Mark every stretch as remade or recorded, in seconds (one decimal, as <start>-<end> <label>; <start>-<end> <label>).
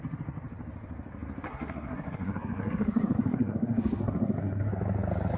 0.0-1.5 recorded; 1.5-4.7 remade; 4.7-5.4 recorded